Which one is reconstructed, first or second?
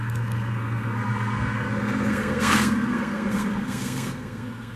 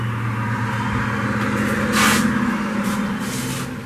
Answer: first